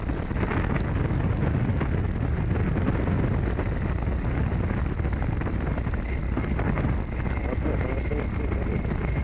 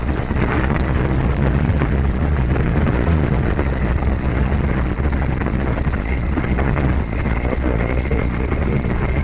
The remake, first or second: second